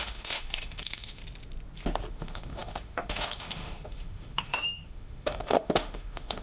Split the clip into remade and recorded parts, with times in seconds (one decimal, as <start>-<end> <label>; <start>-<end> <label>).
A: 0.0-1.2 remade; 1.2-2.1 recorded; 2.1-6.4 remade